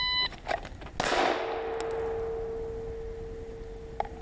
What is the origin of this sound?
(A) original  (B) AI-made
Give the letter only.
A